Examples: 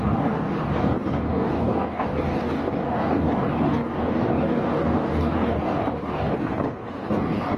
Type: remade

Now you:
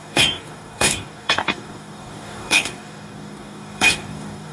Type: remade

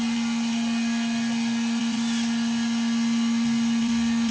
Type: recorded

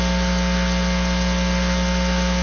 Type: recorded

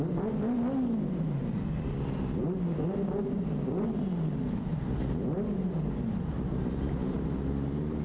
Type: recorded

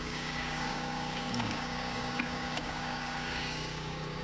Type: remade